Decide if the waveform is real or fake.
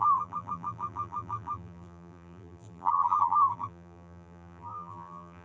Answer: fake